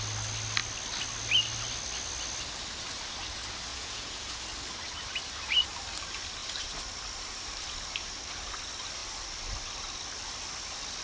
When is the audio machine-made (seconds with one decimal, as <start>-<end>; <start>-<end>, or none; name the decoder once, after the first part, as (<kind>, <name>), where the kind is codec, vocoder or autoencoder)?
3.7-4.4 (vocoder, Vocos)